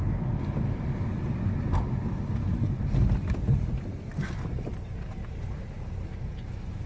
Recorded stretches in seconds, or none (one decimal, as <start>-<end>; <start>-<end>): 0.0-6.9